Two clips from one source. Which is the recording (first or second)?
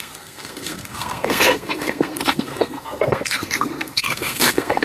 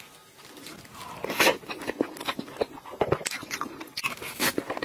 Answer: second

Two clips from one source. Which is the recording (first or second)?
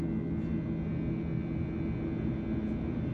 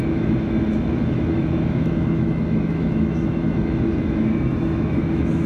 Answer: first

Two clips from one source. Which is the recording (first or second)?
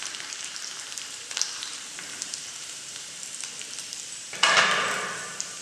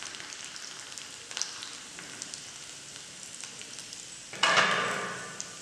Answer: second